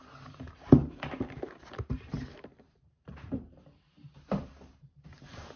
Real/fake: fake